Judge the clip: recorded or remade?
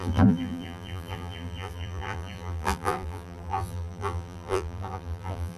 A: remade